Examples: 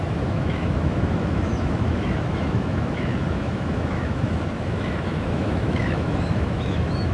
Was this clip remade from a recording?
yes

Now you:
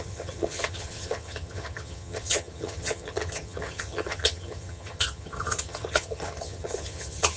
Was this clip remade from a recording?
yes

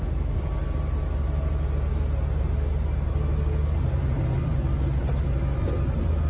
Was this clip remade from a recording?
no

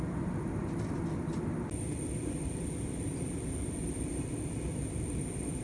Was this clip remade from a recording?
no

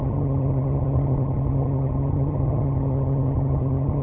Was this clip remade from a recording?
yes